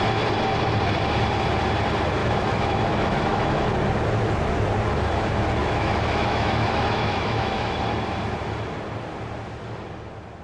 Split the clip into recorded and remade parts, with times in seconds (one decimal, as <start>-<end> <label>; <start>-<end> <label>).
0.0-2.2 recorded; 2.2-3.7 remade; 3.7-5.6 recorded; 5.6-7.8 remade; 7.8-10.4 recorded